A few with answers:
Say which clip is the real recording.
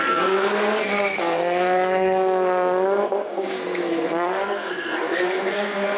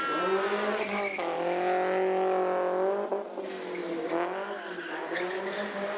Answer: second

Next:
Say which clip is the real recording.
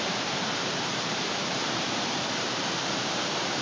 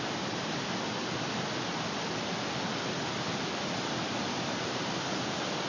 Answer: second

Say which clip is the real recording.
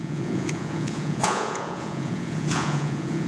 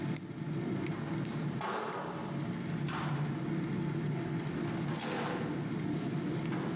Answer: second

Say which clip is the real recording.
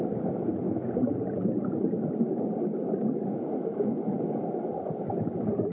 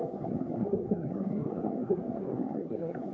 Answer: first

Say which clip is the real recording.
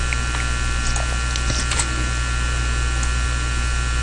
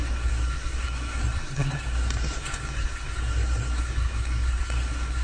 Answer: first